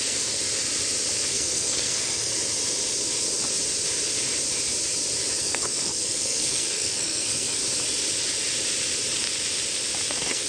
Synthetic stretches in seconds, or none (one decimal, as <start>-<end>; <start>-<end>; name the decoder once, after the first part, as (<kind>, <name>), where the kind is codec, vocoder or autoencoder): 0.0-0.4 (codec, SNAC); 1.3-2.3; 5.4-7.6; 10.1-10.5